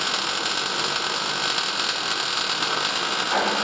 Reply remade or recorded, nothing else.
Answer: recorded